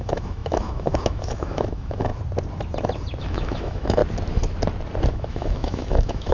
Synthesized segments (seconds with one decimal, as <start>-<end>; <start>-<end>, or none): 0.0-2.1; 3.2-4.0; 5.1-6.3